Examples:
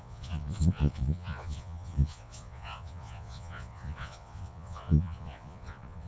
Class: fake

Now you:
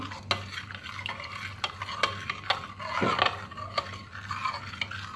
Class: real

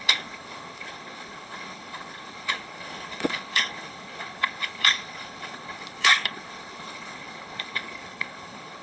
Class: fake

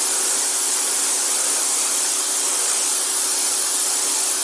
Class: real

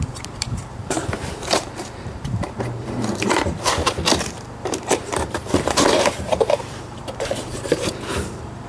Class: fake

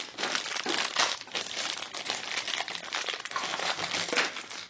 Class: real